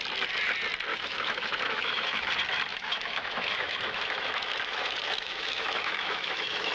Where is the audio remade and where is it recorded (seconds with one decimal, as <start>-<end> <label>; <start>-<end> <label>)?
0.0-0.9 recorded; 0.9-2.3 remade; 2.3-2.7 recorded; 2.7-6.7 remade